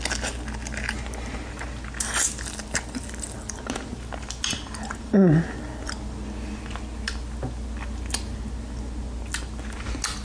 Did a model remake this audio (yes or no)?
no